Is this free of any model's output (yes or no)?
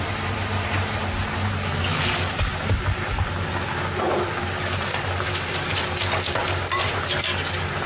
yes